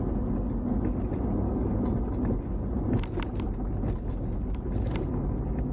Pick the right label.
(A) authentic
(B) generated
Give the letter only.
A